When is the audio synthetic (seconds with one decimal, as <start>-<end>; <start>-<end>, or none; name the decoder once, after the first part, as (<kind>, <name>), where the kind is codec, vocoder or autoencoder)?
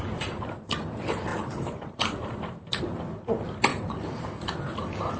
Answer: 1.3-2.8 (vocoder, BigVGAN v2); 3.7-4.3